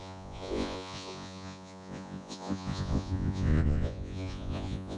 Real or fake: fake